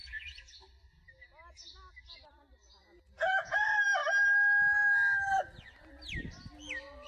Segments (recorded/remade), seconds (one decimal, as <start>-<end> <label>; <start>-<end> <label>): 0.0-0.5 remade; 0.5-2.8 recorded; 2.8-3.5 remade; 3.5-7.1 recorded